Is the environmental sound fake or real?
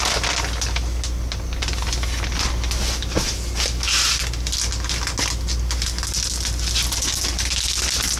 real